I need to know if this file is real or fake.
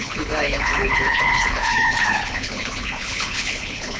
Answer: fake